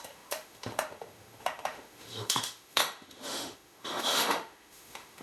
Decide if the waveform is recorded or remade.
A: remade